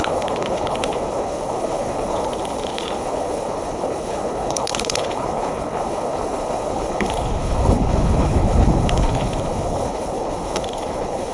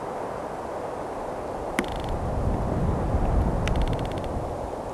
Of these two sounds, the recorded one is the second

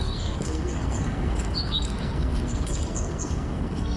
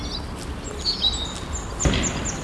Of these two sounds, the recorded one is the second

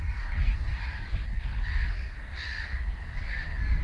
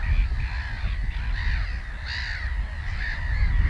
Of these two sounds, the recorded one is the second